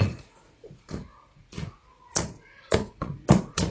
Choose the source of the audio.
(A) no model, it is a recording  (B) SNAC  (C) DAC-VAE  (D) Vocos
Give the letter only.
D